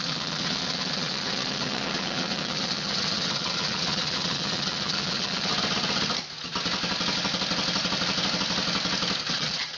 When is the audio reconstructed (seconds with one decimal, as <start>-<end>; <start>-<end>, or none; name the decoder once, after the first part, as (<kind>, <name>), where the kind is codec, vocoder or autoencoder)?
0.0-5.5 (vocoder, WaveNeXt); 9.3-9.8